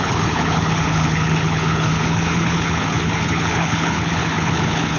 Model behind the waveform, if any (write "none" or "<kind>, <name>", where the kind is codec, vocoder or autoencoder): codec, HILCodec